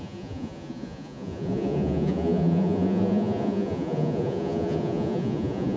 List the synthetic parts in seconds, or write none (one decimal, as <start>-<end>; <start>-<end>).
0.0-5.8